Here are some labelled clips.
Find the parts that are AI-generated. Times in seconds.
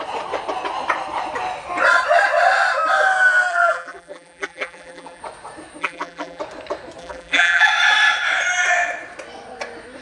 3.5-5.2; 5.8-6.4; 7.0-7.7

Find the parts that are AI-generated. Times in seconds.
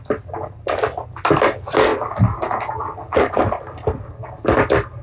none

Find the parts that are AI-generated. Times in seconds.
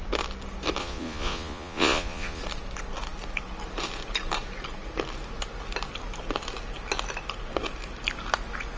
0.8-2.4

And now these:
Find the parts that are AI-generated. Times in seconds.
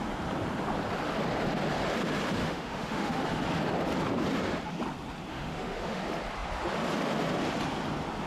2.4-3.4; 5.3-6.0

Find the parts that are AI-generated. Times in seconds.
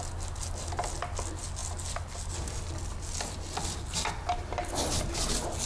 none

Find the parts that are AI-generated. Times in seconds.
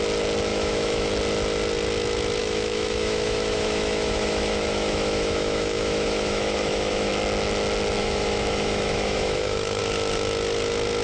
0.5-1.1; 2.4-7.1; 8.0-9.8